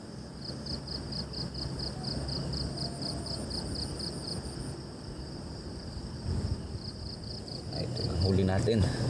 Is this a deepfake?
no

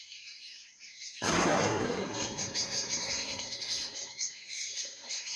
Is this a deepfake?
yes